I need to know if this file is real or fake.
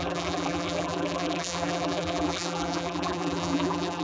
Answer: fake